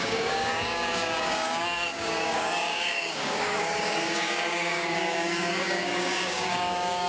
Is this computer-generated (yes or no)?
yes